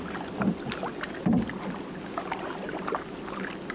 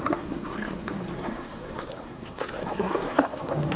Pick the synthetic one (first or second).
second